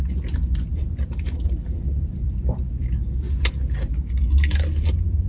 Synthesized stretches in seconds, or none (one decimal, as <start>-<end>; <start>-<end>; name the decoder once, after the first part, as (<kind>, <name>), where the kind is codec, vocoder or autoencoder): none